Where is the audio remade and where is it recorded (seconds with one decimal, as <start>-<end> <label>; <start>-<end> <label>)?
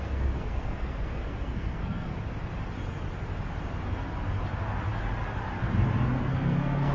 0.0-2.1 remade; 2.1-6.2 recorded; 6.2-6.9 remade